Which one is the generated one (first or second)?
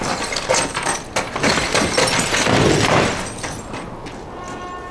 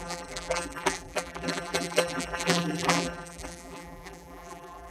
second